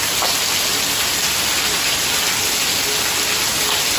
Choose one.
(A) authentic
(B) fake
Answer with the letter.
A